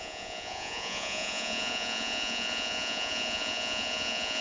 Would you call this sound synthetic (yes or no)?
yes